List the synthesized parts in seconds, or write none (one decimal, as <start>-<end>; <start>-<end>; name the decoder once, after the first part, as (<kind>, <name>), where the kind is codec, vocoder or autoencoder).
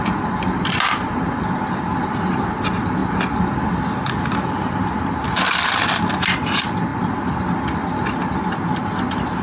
none